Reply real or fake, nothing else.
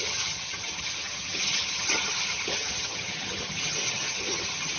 fake